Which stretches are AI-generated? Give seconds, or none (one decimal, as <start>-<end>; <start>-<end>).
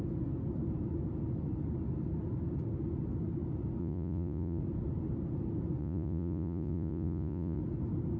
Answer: 3.8-4.6; 5.8-7.6